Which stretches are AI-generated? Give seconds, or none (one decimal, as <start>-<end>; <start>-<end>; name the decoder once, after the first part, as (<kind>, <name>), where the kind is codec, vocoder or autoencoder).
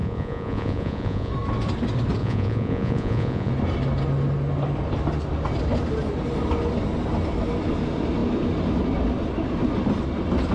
0.0-1.3 (vocoder, Vocos); 2.2-3.5